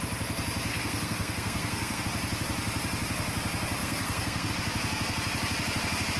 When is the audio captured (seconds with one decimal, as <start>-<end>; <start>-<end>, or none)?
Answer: 0.0-0.7; 2.0-3.8; 4.5-6.2